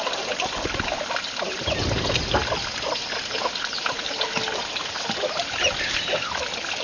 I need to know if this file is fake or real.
real